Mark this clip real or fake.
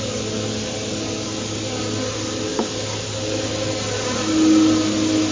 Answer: real